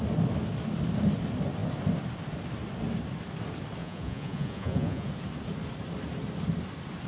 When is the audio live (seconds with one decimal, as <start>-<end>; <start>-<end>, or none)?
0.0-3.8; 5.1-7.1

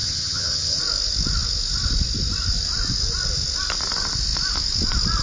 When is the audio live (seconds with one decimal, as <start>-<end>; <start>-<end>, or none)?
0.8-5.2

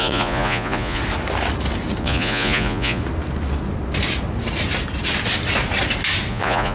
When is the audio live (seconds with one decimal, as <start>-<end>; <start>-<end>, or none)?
1.0-2.0; 3.0-6.3

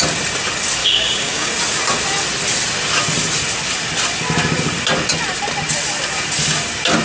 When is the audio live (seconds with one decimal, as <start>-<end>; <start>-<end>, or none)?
0.0-0.8; 1.5-7.0

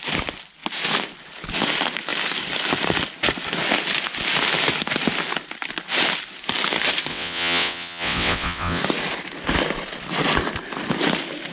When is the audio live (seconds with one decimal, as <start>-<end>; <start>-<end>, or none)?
0.0-7.1; 8.8-11.5

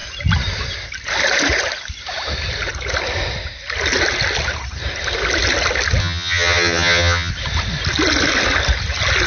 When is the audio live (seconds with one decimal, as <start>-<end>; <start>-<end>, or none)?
0.0-6.0; 7.3-9.3